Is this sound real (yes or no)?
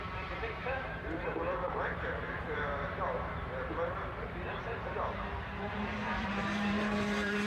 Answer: no